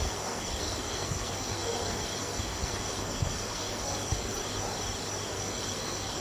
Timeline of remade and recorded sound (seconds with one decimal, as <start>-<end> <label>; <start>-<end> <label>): 0.0-4.4 remade; 4.4-5.3 recorded; 5.3-6.2 remade